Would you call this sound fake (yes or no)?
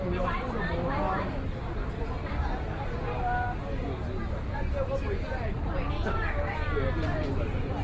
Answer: no